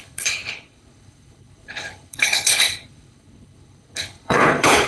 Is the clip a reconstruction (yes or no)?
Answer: yes